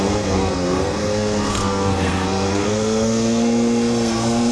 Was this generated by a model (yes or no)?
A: yes